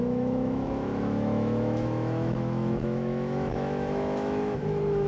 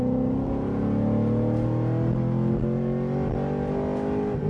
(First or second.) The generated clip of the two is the first